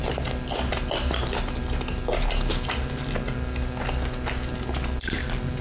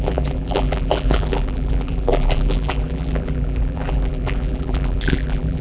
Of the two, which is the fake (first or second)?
second